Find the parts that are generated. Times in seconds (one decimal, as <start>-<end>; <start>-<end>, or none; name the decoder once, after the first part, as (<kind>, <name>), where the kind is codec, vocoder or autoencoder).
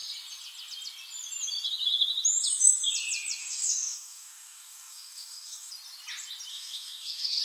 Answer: 3.4-5.7 (codec, DAC); 6.5-7.4